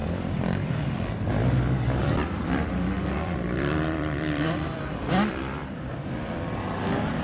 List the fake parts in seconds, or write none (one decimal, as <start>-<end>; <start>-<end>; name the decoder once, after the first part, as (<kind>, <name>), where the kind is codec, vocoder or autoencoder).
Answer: 0.0-1.3 (vocoder, BigVGAN v2); 2.0-5.9